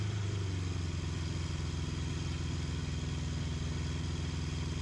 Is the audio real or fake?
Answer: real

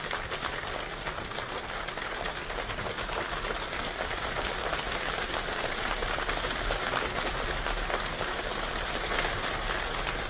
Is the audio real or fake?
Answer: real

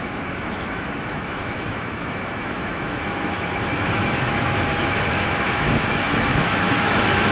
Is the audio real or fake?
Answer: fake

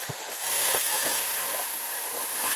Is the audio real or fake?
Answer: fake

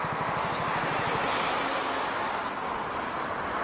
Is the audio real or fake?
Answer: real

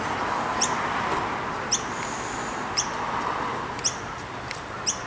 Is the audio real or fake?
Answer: real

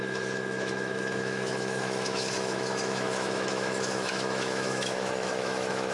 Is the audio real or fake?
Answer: fake